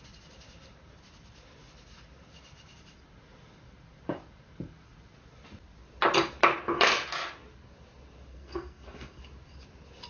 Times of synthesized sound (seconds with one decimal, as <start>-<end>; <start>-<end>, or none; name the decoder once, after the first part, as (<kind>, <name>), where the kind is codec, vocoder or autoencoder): 8.3-9.2 (codec, SNAC)